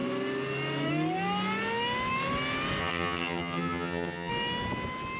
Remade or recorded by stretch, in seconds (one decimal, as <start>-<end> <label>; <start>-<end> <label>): 0.0-2.8 recorded; 2.8-4.3 remade; 4.3-5.2 recorded

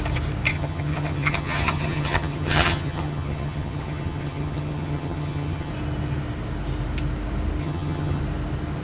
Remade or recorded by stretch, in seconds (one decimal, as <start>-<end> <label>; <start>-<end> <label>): 0.0-0.5 recorded; 0.5-5.7 remade; 5.7-7.6 recorded; 7.6-8.2 remade; 8.2-8.8 recorded